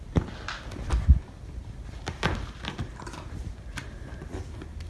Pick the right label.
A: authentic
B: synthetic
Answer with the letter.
A